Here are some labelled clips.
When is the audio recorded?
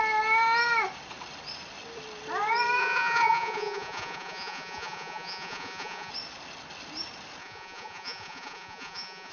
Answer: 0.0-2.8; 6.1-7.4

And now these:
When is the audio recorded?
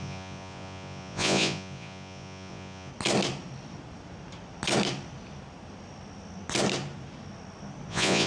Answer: 2.9-7.9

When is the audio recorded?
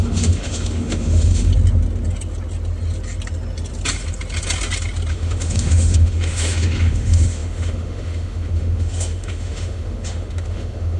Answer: 1.5-5.1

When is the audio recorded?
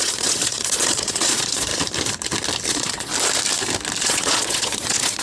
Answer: 1.7-2.7; 3.1-4.0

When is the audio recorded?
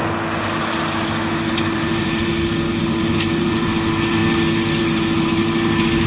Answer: 0.0-1.5; 2.3-2.8; 4.2-4.8; 5.4-6.1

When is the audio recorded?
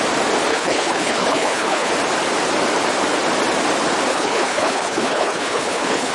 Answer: 0.0-0.5; 1.9-4.1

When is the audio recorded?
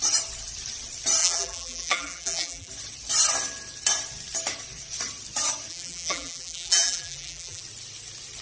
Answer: 0.0-1.2; 2.7-5.7; 7.6-8.4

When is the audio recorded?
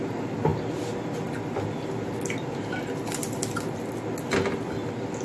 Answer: 0.0-0.5; 3.6-5.2